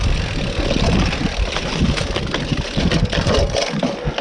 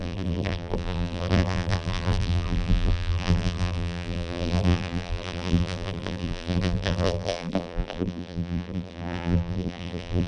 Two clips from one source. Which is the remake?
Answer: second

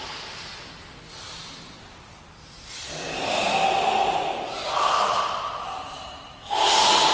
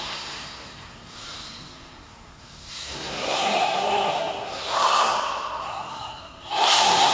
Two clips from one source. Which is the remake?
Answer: second